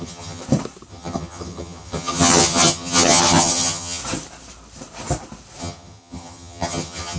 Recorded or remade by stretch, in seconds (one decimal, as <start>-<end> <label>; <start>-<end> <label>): 0.0-0.4 remade; 0.4-0.9 recorded; 0.9-4.0 remade; 4.0-5.6 recorded; 5.6-7.2 remade